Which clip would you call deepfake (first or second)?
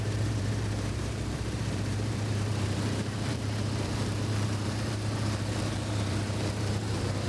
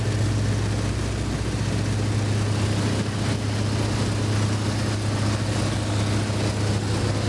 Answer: first